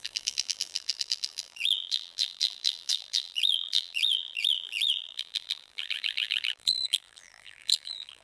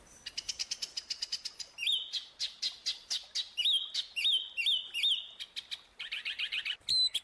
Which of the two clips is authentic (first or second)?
second